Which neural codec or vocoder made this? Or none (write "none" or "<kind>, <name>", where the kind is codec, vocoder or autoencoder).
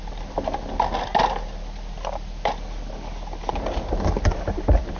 none